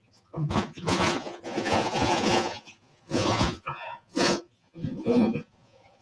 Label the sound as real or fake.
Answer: fake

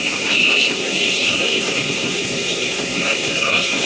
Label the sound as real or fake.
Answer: fake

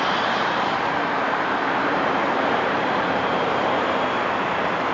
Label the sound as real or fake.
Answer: fake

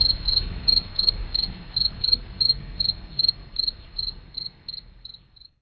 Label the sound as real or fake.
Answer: fake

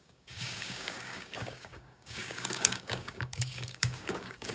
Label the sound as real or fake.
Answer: fake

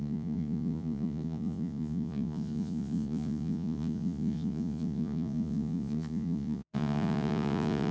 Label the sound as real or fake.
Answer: fake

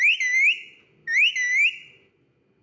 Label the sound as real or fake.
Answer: real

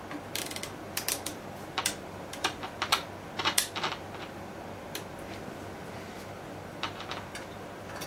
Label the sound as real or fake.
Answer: fake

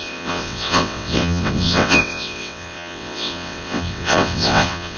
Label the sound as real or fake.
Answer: fake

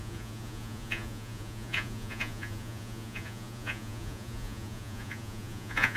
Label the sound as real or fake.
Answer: fake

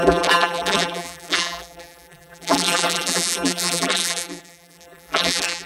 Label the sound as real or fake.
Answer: fake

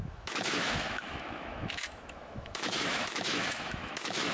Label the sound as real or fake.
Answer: fake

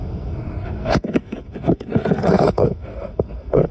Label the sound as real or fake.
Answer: fake